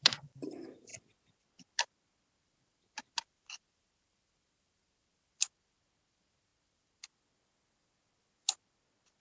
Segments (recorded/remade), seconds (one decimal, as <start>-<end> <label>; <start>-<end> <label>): 0.0-9.2 remade